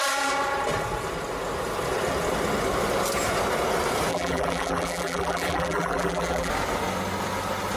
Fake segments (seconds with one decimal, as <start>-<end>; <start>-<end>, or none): 4.1-6.5